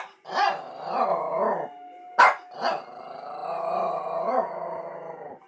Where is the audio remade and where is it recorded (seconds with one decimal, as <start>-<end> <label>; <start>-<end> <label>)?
0.0-5.5 recorded